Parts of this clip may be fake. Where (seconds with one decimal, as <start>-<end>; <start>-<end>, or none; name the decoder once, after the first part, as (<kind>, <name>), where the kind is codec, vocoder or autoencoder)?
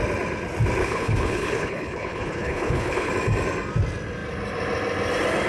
0.8-3.1 (codec, HILCodec)